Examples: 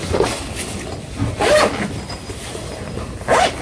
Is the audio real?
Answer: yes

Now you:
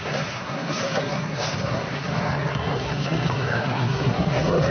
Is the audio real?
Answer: no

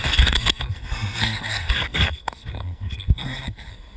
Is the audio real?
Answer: no